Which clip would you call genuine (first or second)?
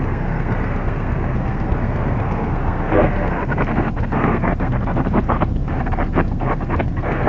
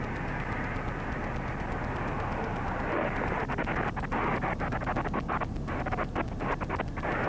second